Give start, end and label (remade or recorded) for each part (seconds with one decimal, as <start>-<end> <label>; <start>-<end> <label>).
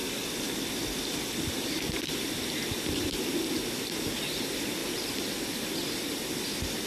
0.0-4.1 remade; 4.1-4.8 recorded; 4.8-6.9 remade